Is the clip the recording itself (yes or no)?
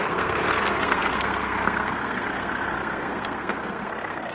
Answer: no